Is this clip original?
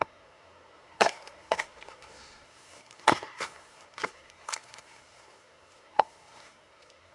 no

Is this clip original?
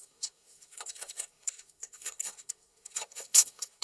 no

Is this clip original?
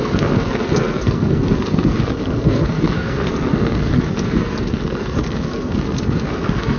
no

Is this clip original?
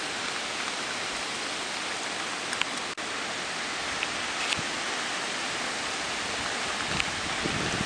yes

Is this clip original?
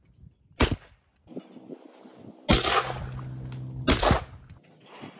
yes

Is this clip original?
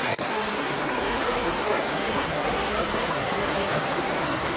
no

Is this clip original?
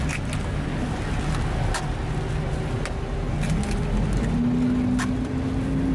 yes